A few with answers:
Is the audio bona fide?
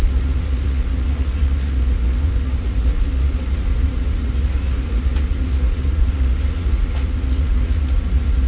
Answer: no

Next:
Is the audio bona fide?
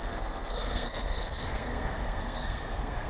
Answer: no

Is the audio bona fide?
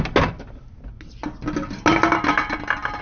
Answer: yes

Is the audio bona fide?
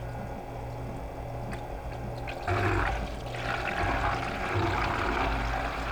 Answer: yes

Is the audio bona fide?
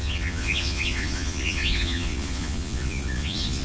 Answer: no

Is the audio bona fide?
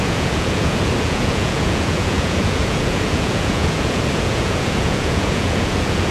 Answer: no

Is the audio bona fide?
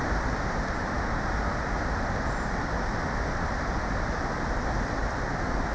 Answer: yes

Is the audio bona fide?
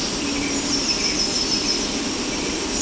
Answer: yes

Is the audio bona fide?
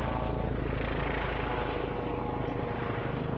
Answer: yes